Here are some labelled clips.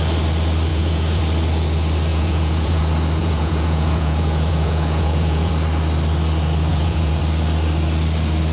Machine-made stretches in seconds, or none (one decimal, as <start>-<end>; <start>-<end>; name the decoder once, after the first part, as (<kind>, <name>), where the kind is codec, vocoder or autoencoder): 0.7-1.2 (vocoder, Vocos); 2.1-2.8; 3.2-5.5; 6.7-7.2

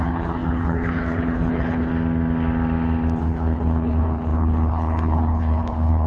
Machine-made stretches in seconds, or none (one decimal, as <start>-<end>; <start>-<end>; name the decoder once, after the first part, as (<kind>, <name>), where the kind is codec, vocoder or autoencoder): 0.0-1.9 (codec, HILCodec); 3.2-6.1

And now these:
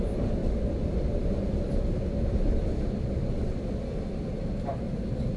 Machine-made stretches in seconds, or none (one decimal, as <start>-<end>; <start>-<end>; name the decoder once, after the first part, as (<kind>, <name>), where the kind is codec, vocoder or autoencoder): none

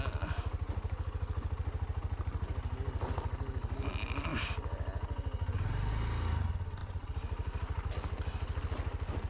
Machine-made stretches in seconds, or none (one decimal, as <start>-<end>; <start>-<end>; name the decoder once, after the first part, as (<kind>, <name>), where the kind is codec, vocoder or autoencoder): 6.8-7.9 (vocoder, BigVGAN v2)

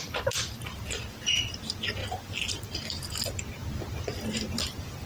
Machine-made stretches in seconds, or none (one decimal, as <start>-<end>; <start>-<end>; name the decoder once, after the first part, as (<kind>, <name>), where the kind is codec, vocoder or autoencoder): none

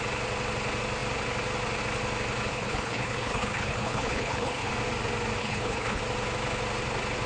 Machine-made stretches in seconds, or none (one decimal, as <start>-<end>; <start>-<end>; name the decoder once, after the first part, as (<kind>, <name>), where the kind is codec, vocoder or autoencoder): 2.5-4.7 (codec, HILCodec); 5.4-6.0

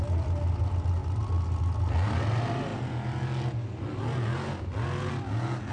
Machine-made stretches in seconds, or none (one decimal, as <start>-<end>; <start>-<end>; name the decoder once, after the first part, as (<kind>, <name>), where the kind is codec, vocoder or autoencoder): none